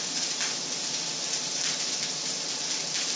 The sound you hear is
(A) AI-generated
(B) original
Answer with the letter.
B